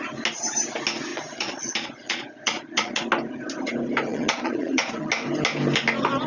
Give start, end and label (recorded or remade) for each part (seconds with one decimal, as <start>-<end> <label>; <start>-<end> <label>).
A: 0.0-1.1 recorded; 1.1-3.0 remade; 3.0-4.1 recorded; 4.1-5.1 remade; 5.1-6.3 recorded